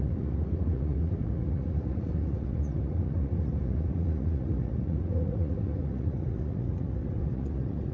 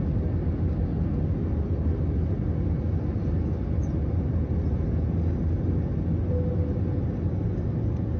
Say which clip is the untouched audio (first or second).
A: second